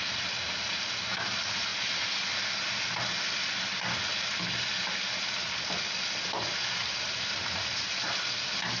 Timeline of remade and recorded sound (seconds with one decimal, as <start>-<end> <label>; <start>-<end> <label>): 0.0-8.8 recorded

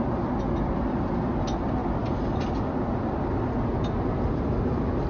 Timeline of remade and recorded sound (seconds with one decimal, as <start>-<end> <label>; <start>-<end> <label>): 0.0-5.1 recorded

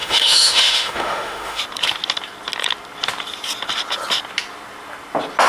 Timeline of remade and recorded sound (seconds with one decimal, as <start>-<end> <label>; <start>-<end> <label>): 0.0-1.6 remade; 1.6-5.5 recorded

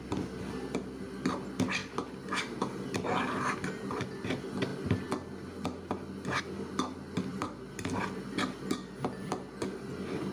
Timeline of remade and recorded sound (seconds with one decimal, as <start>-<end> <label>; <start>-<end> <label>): 0.0-10.3 recorded

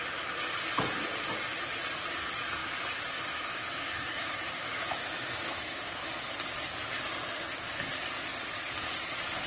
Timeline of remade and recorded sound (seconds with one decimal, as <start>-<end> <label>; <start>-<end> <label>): 0.0-2.6 recorded; 2.6-6.1 remade; 6.1-9.5 recorded

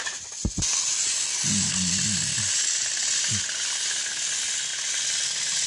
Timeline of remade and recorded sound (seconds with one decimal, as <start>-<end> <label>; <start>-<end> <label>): 0.0-5.7 recorded

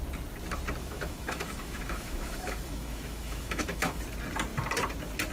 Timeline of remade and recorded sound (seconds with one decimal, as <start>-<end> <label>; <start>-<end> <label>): 0.0-0.8 recorded; 0.8-4.0 remade; 4.0-5.3 recorded

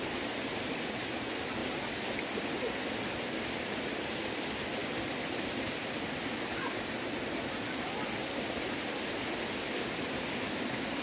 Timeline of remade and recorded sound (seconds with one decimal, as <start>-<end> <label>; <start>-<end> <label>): 0.0-11.0 recorded